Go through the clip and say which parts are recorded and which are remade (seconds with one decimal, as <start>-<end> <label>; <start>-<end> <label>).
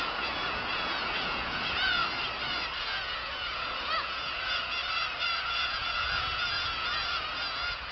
0.0-2.0 remade; 2.0-2.8 recorded; 2.8-4.8 remade; 4.8-5.5 recorded; 5.5-7.9 remade